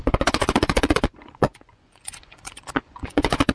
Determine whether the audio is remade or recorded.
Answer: remade